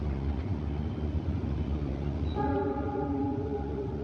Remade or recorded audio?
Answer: remade